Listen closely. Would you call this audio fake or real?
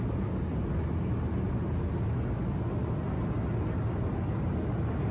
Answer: real